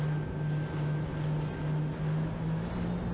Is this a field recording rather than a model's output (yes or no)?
yes